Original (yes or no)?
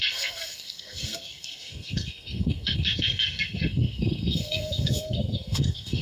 no